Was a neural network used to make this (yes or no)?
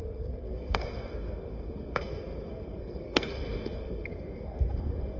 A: yes